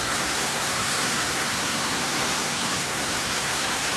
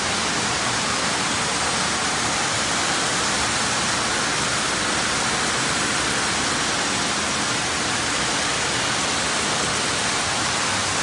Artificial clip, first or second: first